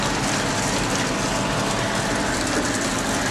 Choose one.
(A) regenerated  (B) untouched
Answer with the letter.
B